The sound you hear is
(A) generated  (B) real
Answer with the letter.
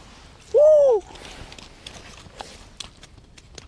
B